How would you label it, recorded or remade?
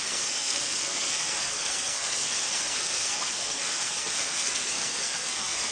remade